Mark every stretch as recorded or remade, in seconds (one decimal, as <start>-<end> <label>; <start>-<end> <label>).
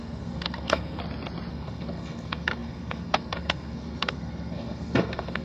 0.0-1.0 remade; 1.0-1.5 recorded; 1.5-5.4 remade